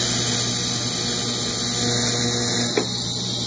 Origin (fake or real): real